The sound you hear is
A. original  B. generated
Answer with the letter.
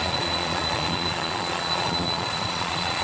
B